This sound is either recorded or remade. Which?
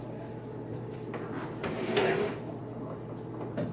recorded